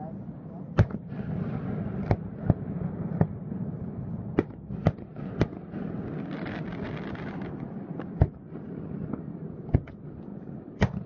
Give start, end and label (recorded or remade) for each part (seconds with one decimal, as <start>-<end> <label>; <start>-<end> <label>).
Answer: 0.0-11.1 recorded

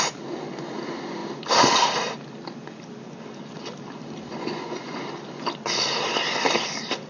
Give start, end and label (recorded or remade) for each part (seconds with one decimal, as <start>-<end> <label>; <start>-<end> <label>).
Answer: 0.0-4.3 recorded; 4.3-5.0 remade; 5.0-7.1 recorded

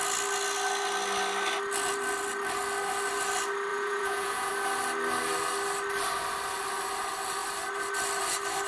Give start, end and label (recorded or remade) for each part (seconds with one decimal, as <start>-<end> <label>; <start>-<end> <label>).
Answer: 0.0-3.7 recorded; 3.7-4.5 remade; 4.5-8.7 recorded

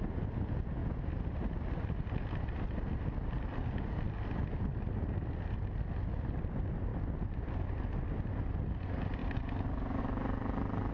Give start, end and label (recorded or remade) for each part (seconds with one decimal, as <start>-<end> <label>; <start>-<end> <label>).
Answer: 0.0-10.9 recorded

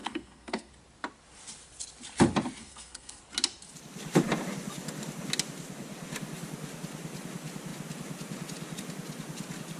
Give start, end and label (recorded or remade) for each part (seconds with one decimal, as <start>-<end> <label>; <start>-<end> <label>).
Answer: 0.0-0.7 remade; 0.7-2.6 recorded; 2.6-3.2 remade; 3.2-9.8 recorded